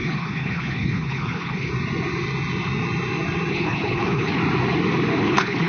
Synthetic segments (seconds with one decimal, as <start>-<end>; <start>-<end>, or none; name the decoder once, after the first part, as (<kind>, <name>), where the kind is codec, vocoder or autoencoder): 0.0-1.7 (codec, HILCodec); 3.5-4.4; 5.2-5.7